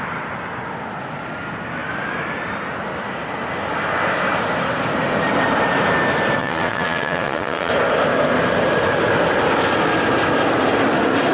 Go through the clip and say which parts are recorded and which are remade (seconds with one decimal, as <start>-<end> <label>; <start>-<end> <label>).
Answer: 0.0-6.4 recorded; 6.4-7.7 remade; 7.7-11.3 recorded